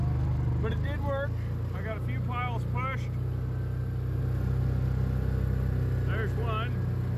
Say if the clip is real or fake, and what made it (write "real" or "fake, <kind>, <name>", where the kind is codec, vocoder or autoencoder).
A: real